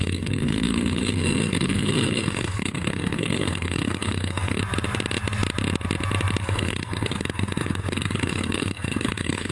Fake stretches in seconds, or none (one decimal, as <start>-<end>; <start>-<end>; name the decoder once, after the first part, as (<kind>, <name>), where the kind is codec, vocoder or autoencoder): 0.0-4.6 (codec, SNAC); 6.4-9.5